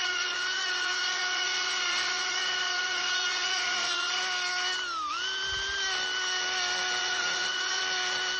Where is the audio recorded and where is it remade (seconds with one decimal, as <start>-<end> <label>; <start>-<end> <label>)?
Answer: 0.0-4.2 remade; 4.2-7.0 recorded; 7.0-7.8 remade; 7.8-8.4 recorded